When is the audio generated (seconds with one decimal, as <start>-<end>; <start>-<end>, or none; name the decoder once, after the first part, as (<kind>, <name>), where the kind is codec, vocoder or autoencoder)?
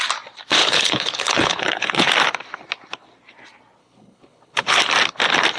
0.6-2.1 (codec, HILCodec); 3.8-4.8